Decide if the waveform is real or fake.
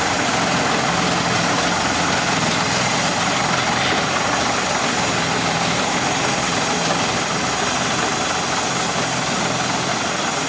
real